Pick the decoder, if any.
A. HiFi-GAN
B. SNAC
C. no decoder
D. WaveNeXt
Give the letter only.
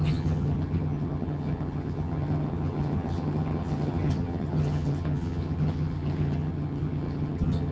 A